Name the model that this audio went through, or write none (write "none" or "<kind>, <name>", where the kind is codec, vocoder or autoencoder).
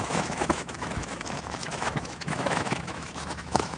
autoencoder, DAC-VAE